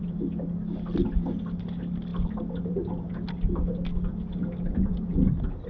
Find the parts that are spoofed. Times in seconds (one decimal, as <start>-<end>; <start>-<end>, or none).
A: none